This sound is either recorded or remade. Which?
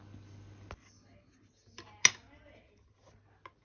recorded